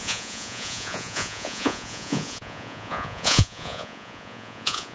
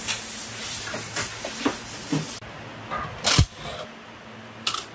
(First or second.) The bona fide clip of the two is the second